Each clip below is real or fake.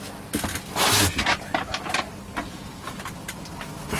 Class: real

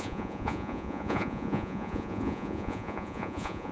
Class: fake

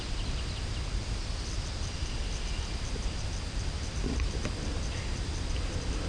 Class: real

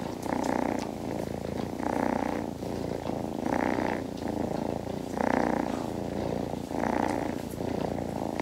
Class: real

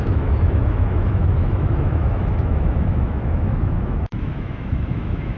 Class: fake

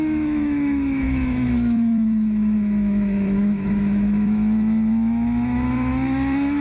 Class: fake